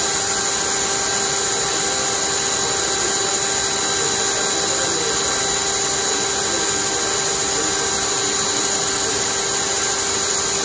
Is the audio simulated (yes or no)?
no